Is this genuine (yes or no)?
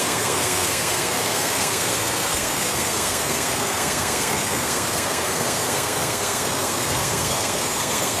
no